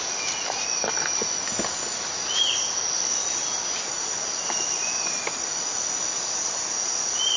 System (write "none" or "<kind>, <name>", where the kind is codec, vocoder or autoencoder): none